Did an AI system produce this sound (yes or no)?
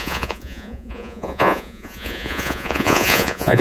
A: yes